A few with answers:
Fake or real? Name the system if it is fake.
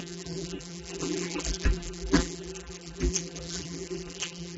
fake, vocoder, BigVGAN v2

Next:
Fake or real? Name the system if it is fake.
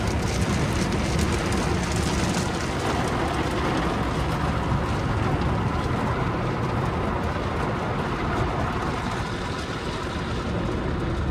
real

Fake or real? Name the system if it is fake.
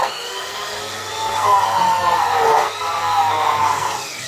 fake, codec, SNAC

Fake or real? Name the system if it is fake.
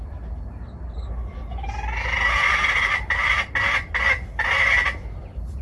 real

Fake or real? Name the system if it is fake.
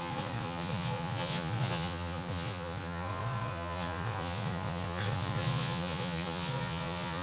fake, vocoder, Vocos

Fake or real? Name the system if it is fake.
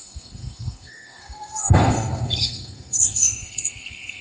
fake, codec, SNAC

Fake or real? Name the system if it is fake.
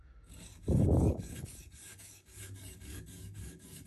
fake, codec, DAC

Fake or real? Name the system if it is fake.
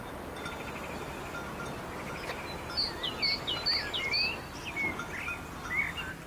real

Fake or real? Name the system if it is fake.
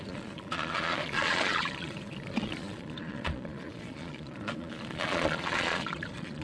fake, vocoder, Vocos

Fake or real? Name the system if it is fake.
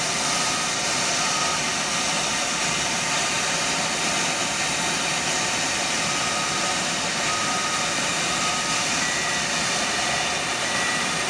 real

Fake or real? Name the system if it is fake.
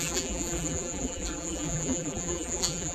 fake, vocoder, BigVGAN v2